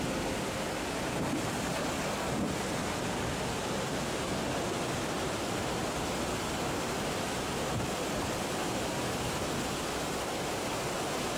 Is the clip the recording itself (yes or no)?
yes